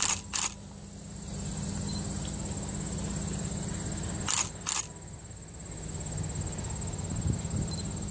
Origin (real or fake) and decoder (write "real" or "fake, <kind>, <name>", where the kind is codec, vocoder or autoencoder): real